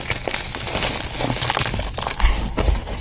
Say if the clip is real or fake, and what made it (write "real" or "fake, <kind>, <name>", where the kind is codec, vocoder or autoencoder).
real